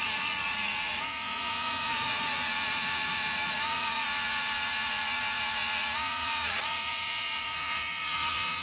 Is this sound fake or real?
fake